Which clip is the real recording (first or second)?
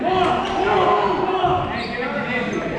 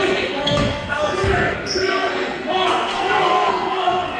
first